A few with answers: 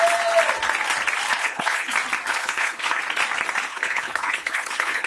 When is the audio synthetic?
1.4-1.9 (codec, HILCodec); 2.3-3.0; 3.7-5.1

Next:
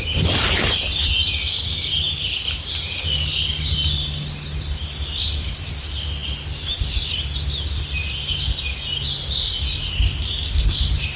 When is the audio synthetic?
none

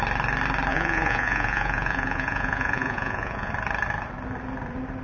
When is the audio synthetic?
0.7-3.5 (vocoder, Vocos)

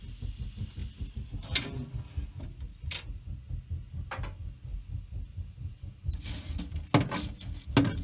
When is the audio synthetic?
none

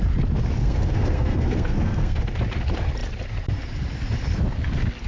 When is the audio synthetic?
0.6-2.2 (codec, SNAC)